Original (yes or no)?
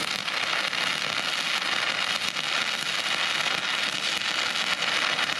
yes